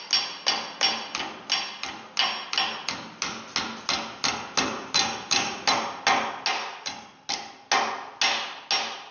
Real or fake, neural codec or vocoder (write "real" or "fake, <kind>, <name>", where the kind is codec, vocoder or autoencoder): real